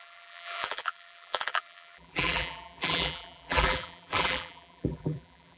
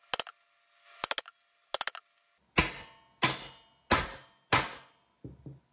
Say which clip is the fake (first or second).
first